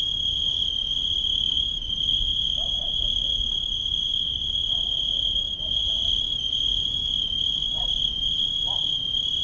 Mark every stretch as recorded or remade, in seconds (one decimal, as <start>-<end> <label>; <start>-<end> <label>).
0.0-9.4 remade